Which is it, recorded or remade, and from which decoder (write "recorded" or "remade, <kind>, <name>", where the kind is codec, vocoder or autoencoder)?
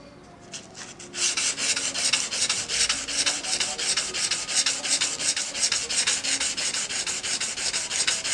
recorded